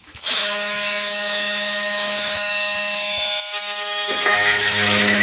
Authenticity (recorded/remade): remade